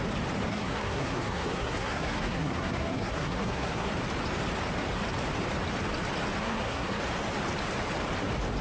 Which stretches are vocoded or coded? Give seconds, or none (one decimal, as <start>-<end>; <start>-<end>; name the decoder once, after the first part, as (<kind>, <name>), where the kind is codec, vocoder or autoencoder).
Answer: 0.5-3.9 (codec, SNAC); 6.4-7.0